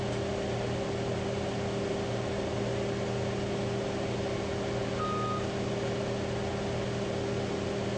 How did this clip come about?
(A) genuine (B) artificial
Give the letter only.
A